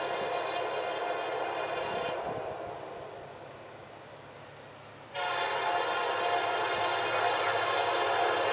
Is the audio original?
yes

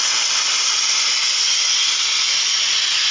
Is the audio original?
yes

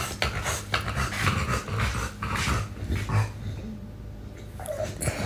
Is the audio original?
yes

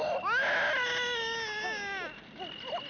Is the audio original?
yes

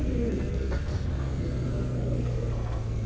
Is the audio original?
no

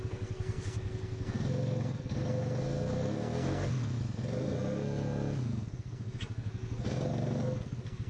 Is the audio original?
no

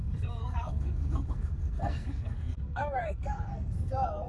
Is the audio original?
no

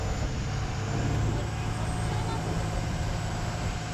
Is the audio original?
yes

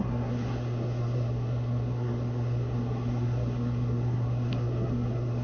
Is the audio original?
no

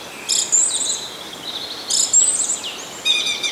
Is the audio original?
yes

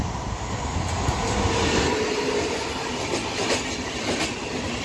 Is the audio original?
yes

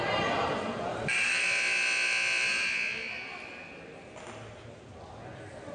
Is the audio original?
yes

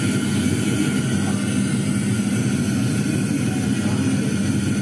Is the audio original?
yes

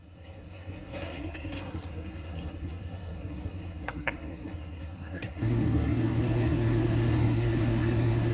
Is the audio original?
no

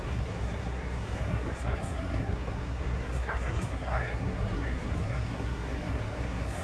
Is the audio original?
no